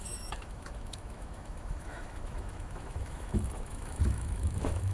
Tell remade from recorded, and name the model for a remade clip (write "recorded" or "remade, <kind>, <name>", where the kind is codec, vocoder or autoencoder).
remade, autoencoder, DAC-VAE